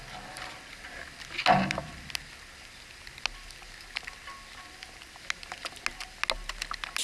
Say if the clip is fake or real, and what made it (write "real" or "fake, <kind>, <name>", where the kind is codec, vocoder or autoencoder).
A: real